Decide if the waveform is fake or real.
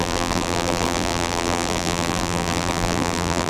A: fake